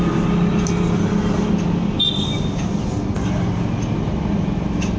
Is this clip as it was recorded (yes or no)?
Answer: yes